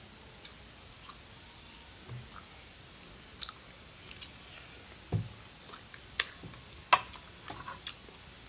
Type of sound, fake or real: real